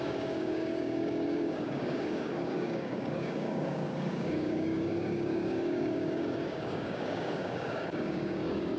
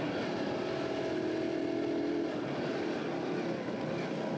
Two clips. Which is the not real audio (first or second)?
first